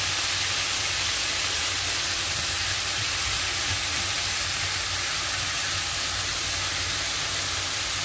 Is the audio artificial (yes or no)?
no